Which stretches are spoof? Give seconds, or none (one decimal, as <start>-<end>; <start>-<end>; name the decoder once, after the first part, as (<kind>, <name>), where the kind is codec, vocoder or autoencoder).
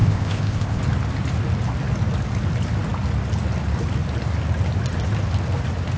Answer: 0.0-0.8 (codec, ZipCodec)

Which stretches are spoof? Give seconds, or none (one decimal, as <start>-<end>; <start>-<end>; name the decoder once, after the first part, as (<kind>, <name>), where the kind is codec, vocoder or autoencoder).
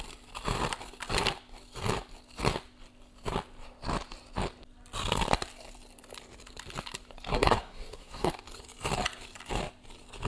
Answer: 7.3-8.3 (codec, SNAC)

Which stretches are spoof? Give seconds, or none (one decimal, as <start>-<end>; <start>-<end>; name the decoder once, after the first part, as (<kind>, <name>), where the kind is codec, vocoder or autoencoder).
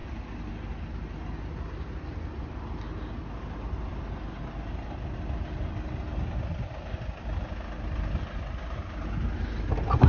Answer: none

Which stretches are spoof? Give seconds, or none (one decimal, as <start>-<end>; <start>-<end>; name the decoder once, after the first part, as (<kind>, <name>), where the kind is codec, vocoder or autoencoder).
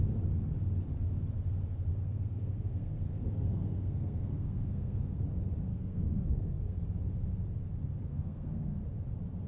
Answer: 1.9-5.2 (codec, SNAC); 5.7-6.8; 8.1-8.8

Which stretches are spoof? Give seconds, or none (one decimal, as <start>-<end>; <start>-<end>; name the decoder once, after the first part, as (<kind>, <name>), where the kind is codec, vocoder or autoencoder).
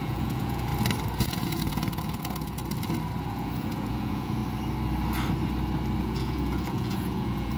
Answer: 0.0-0.7 (vocoder, Vocos); 1.2-2.6; 3.3-4.4; 6.0-7.6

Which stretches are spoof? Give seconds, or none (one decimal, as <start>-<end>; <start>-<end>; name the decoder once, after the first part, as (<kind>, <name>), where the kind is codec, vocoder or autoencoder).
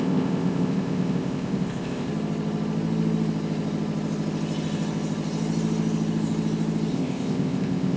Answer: 0.0-2.1 (codec, ZipCodec); 6.9-8.0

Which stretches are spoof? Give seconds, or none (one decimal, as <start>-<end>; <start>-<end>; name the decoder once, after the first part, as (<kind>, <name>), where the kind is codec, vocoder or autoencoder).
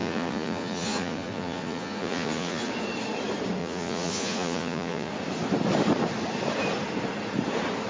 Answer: 0.0-2.7 (vocoder, Vocos); 3.6-5.1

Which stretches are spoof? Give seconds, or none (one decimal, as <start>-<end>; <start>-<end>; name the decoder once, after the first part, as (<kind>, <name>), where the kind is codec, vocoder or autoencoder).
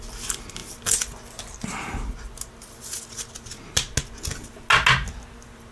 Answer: none